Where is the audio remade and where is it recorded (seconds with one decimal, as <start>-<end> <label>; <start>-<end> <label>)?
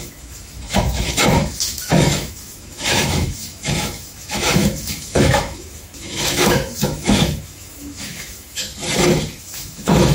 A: 0.0-8.7 remade; 8.7-9.4 recorded; 9.4-10.1 remade